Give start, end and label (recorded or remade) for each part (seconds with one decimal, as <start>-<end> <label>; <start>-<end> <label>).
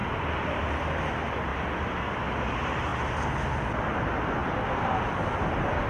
0.0-1.1 remade; 1.1-1.5 recorded; 1.5-2.0 remade; 2.0-5.9 recorded